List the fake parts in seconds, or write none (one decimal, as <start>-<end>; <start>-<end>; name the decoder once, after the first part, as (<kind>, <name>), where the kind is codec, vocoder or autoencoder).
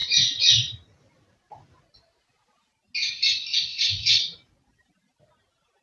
3.7-5.3 (vocoder, BigVGAN v2)